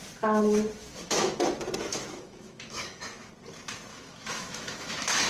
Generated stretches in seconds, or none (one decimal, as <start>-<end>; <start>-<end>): 0.8-1.4; 1.9-3.3; 3.9-5.3